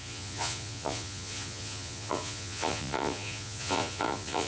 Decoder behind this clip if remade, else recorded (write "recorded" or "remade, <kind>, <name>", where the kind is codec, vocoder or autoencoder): remade, vocoder, Vocos